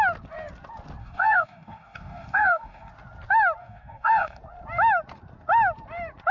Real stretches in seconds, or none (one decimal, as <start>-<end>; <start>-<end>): 0.0-1.0; 2.9-3.6; 4.4-6.3